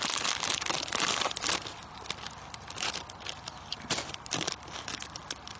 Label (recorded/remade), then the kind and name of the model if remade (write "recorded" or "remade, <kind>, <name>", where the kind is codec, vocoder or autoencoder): recorded